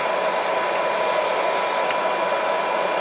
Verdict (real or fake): real